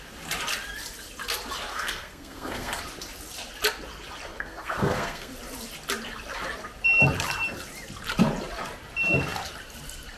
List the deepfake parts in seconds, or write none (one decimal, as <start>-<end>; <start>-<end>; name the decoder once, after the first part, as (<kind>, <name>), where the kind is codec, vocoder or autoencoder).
1.7-2.8 (codec, SNAC); 4.3-5.3